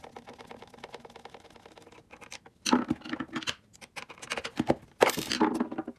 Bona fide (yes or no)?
yes